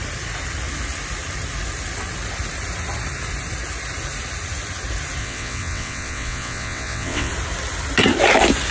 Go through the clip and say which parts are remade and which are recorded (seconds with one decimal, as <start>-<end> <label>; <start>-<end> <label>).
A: 0.0-5.2 recorded; 5.2-7.3 remade; 7.3-8.7 recorded